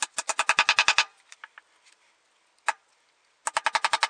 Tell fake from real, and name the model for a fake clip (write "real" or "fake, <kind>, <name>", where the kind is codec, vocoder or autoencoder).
real